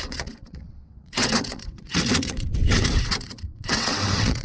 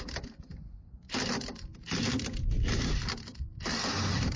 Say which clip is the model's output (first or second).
first